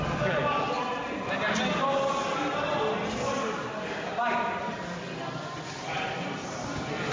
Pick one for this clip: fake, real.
real